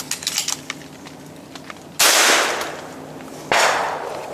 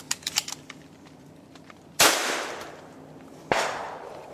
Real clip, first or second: first